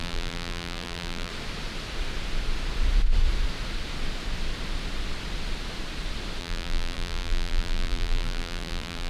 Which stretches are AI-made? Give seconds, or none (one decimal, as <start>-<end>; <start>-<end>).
0.0-1.3; 6.4-9.1